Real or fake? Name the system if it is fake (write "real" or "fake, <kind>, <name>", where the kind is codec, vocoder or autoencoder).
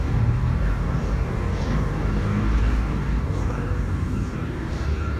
fake, codec, DAC